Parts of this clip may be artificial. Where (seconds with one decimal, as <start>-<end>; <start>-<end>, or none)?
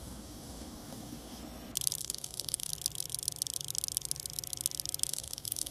0.0-1.4; 2.0-2.7; 5.1-5.7